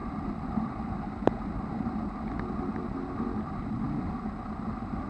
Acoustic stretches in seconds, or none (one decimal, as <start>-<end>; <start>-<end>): 0.0-5.1